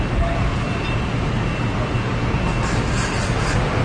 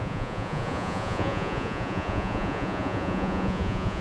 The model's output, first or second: second